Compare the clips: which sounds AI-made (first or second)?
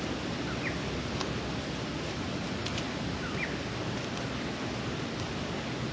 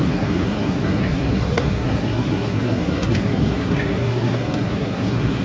second